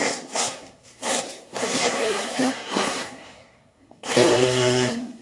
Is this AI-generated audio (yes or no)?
yes